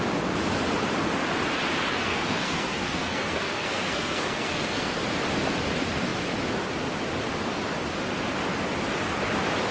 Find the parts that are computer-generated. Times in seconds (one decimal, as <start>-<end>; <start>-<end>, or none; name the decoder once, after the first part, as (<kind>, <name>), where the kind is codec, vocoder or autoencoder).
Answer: 1.9-5.0 (codec, SNAC)